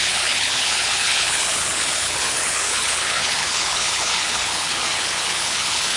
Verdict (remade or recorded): remade